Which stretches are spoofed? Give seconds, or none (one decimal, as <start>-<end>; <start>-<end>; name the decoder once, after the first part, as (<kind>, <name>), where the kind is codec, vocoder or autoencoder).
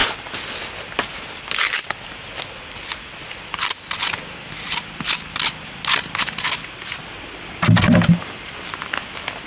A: none